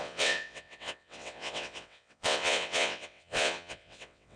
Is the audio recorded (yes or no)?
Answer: no